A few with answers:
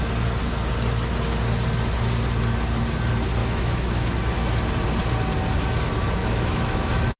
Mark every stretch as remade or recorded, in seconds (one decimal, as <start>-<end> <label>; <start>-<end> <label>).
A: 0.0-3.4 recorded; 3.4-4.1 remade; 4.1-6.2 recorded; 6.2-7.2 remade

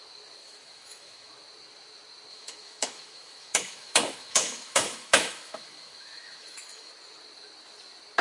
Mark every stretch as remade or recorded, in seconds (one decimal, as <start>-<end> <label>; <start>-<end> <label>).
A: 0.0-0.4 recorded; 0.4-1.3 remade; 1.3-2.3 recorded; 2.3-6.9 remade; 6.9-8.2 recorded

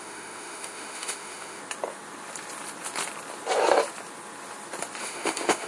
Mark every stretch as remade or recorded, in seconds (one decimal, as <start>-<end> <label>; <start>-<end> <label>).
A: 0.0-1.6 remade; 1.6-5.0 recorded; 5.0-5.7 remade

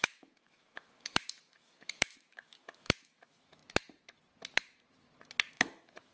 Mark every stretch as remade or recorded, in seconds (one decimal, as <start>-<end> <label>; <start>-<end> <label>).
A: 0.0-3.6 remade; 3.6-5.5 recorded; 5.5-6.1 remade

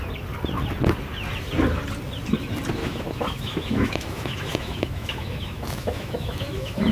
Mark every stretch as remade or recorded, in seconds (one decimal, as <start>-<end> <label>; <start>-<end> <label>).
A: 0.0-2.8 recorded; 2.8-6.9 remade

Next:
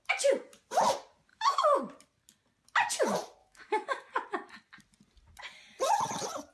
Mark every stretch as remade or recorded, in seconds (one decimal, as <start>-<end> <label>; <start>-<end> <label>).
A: 0.0-1.3 recorded; 1.3-1.8 remade; 1.8-3.4 recorded; 3.4-4.1 remade; 4.1-6.5 recorded

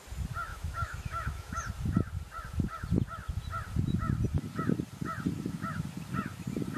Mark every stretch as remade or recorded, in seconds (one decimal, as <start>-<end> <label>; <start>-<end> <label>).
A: 0.0-0.5 recorded; 0.5-1.6 remade; 1.6-6.8 recorded

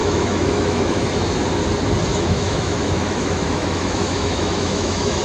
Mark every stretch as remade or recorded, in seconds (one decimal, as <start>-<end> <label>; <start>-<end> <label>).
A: 0.0-1.0 remade; 1.0-2.1 recorded; 2.1-5.2 remade